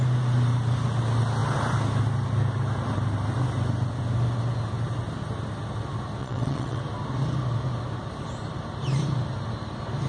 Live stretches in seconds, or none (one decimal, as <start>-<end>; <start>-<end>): 0.0-6.2; 6.8-10.1